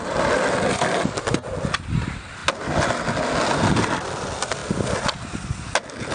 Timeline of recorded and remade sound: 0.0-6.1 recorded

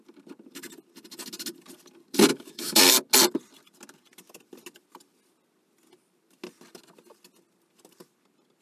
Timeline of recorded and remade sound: 0.0-2.3 recorded; 2.3-2.8 remade; 2.8-8.6 recorded

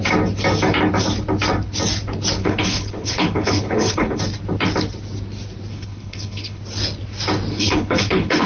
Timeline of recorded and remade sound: 0.0-2.4 recorded; 2.4-4.2 remade; 4.2-5.7 recorded; 5.7-6.6 remade; 6.6-7.5 recorded; 7.5-8.5 remade